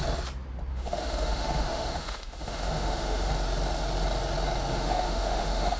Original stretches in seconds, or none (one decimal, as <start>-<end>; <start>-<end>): 0.0-0.7; 3.3-4.7

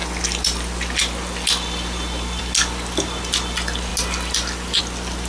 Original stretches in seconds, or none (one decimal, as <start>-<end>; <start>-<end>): 0.0-5.3